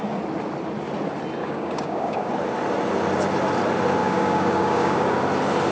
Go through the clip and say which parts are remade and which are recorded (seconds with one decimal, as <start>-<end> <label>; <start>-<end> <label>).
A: 0.0-1.4 recorded; 1.4-2.3 remade; 2.3-4.0 recorded; 4.0-5.0 remade; 5.0-5.7 recorded